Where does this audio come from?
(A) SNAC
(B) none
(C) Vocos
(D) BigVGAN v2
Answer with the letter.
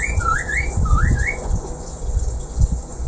C